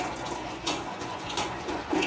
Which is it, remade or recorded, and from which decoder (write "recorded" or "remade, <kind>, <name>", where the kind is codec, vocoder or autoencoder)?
remade, vocoder, Vocos